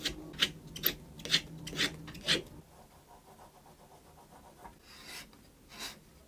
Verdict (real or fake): real